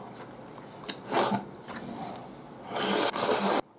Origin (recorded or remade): recorded